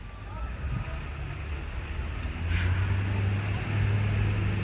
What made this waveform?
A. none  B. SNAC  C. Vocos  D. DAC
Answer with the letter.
A